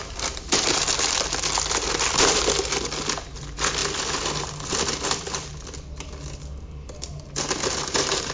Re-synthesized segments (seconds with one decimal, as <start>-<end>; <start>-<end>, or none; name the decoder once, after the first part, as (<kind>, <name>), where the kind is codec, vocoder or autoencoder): 0.0-3.8 (vocoder, BigVGAN v2); 6.4-8.3